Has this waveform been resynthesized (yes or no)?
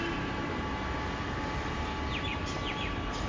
no